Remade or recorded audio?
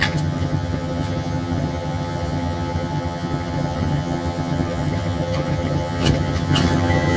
remade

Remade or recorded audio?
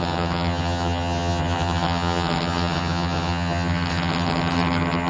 remade